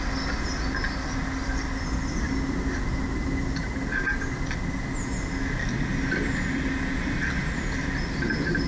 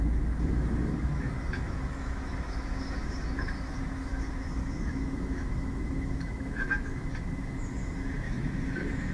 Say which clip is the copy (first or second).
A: second